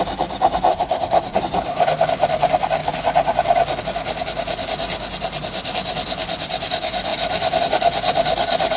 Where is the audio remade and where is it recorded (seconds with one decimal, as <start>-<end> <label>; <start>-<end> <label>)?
0.0-0.7 recorded; 0.7-1.4 remade; 1.4-8.8 recorded